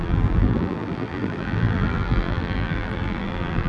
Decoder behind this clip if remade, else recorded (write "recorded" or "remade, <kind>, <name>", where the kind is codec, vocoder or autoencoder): remade, vocoder, BigVGAN v2